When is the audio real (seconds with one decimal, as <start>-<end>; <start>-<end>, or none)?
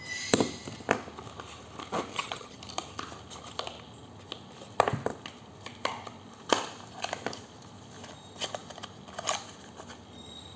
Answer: 0.0-2.1; 2.6-10.6